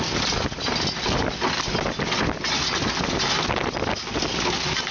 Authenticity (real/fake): real